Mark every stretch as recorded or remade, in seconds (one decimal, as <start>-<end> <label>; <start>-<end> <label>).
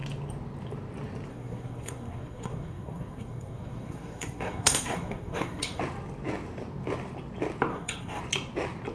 0.0-1.3 recorded; 1.3-5.8 remade; 5.8-7.7 recorded; 7.7-8.2 remade; 8.2-8.9 recorded